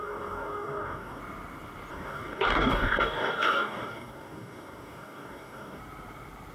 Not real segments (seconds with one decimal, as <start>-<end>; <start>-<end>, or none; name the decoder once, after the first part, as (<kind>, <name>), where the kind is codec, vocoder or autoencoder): 0.0-1.2 (codec, DAC); 1.9-5.8